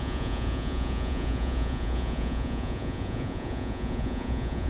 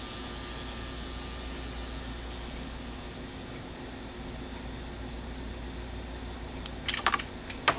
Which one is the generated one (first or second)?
first